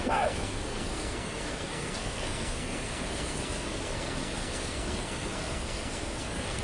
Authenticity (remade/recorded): remade